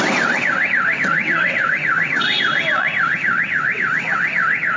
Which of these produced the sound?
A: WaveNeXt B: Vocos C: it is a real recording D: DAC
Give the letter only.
A